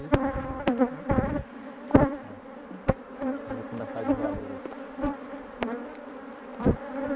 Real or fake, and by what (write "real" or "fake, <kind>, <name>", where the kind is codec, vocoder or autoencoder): fake, vocoder, BigVGAN v2